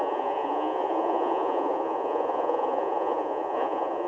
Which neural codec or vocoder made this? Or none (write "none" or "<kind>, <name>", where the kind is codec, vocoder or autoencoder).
vocoder, Vocos